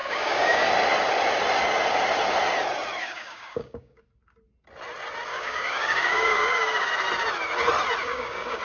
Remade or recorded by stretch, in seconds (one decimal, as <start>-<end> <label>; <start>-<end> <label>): 0.0-0.7 remade; 0.7-3.0 recorded; 3.0-4.0 remade; 4.0-5.3 recorded; 5.3-6.9 remade; 6.9-8.0 recorded; 8.0-8.6 remade